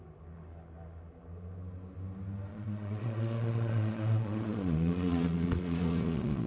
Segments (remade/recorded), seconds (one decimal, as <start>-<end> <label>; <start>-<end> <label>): 0.0-2.5 recorded; 2.5-6.5 remade